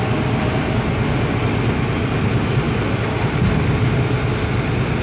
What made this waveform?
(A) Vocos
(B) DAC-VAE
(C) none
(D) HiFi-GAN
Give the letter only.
C